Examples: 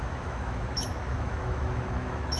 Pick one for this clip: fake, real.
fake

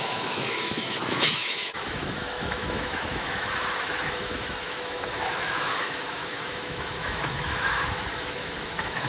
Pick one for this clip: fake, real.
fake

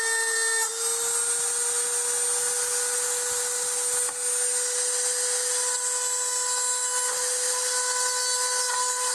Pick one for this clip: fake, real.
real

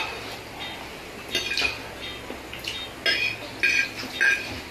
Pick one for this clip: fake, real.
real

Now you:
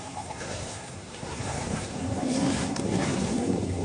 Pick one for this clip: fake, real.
fake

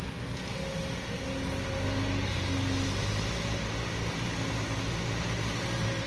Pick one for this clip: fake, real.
real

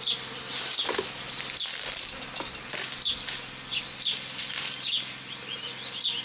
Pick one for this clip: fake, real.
real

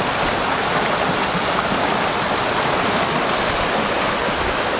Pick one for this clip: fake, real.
real